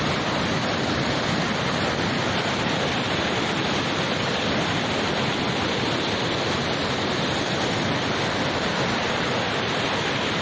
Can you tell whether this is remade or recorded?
remade